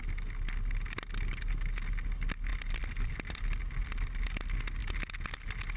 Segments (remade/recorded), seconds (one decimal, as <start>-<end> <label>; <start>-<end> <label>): 0.0-2.5 recorded; 2.5-3.1 remade; 3.1-5.8 recorded